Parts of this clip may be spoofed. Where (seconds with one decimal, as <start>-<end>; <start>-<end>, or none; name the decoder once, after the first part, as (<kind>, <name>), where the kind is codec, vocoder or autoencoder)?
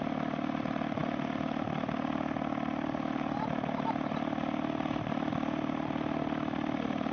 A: none